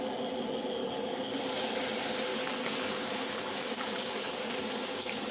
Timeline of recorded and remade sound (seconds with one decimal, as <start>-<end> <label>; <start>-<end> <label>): 0.0-0.8 recorded; 0.8-1.4 remade; 1.4-2.3 recorded; 2.3-5.3 remade